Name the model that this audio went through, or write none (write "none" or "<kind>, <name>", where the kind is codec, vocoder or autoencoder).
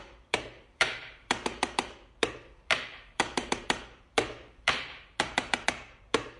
vocoder, BigVGAN v2